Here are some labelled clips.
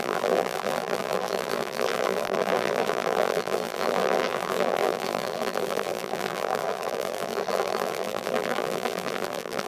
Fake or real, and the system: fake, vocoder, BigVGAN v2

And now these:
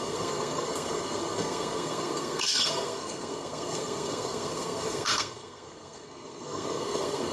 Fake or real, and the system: fake, codec, SNAC